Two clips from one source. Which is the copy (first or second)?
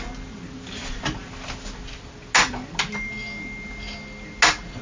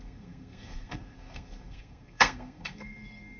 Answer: second